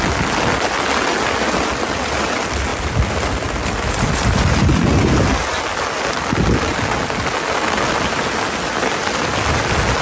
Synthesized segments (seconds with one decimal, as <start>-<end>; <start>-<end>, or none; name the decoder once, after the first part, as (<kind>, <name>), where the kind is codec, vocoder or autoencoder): 2.7-4.2 (vocoder, BigVGAN v2)